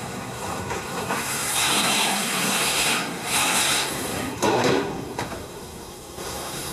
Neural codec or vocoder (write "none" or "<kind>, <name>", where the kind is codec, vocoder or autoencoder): codec, SNAC